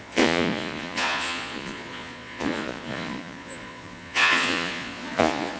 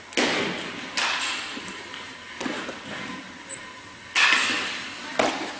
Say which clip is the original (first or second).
second